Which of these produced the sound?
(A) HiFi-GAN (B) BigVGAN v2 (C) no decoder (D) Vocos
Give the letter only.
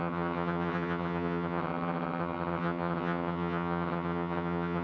A